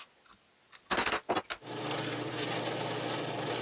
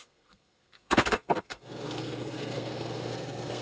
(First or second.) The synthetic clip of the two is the second